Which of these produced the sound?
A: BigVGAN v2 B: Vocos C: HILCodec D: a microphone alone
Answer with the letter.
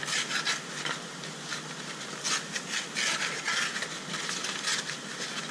D